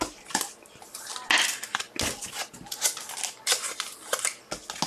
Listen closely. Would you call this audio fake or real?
real